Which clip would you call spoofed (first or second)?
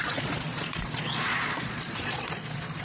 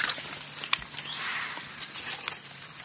first